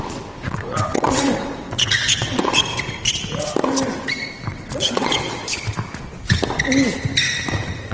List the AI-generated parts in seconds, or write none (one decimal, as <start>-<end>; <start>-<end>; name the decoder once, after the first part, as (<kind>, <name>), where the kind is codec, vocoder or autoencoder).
0.0-2.6 (vocoder, WaveNeXt); 4.5-5.4